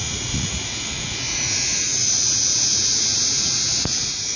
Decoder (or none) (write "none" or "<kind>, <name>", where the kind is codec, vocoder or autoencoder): vocoder, Vocos